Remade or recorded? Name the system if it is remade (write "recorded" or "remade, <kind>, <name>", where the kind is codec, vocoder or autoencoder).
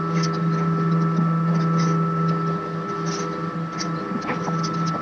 recorded